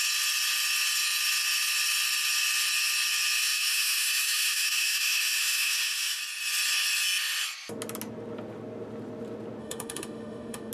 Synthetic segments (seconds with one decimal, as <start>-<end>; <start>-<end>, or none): 3.4-6.2; 9.6-10.7

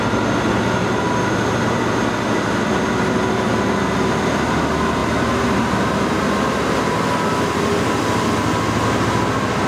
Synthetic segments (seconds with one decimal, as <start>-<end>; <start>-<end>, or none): none

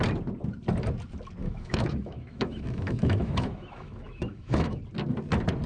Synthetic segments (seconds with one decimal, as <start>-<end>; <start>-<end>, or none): 1.4-4.8

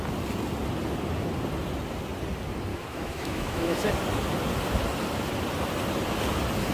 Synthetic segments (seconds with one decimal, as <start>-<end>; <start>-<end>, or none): 2.7-3.9